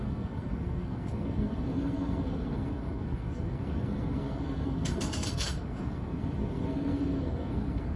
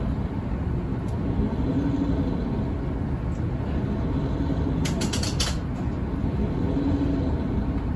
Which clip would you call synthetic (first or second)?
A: first